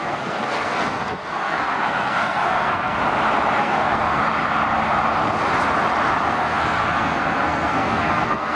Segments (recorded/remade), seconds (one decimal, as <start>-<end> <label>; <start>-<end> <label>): 0.0-3.0 remade; 3.0-3.6 recorded; 3.6-4.2 remade; 4.2-6.3 recorded; 6.3-8.6 remade